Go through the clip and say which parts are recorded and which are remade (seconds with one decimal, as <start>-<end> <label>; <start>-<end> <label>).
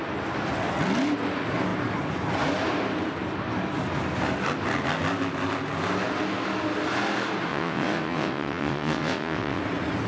0.0-7.5 recorded; 7.5-9.6 remade; 9.6-10.1 recorded